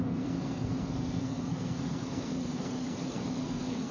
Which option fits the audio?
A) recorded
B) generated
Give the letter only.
B